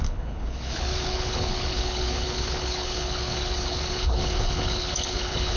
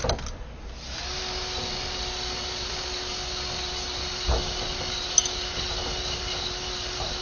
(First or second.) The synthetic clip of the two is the first